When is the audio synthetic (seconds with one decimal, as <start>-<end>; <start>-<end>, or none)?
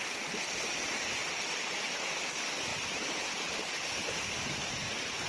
1.2-2.0; 2.7-3.7